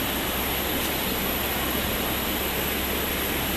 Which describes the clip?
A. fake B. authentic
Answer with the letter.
B